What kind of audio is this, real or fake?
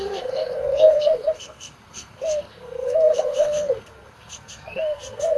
fake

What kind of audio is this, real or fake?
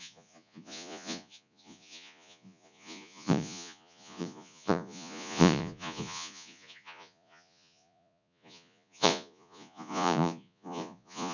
fake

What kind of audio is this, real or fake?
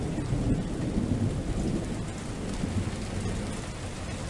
real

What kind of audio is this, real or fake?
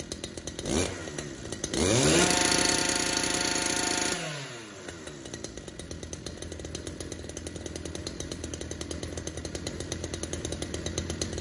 real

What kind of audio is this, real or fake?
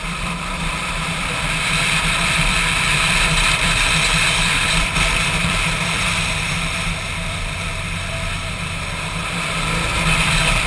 fake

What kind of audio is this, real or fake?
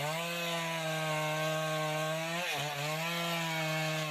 real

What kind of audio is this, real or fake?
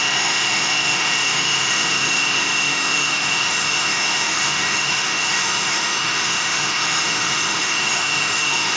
fake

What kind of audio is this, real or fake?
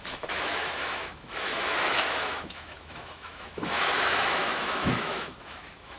fake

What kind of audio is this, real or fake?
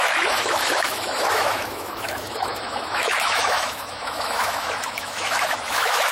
fake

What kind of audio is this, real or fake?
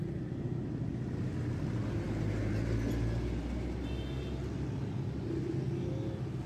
real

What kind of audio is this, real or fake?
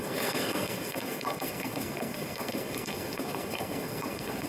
fake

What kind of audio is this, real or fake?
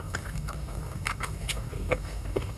fake